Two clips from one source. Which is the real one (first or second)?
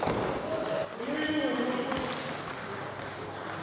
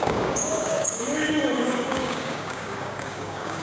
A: first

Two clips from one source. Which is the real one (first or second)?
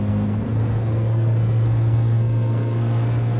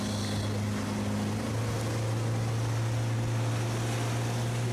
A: second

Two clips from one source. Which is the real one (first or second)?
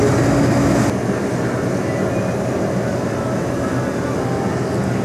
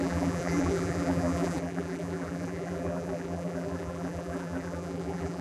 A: first